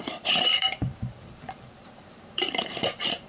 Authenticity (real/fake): fake